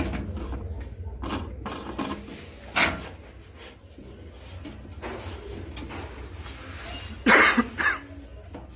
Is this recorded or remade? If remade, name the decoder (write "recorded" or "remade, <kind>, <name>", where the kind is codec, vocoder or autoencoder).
recorded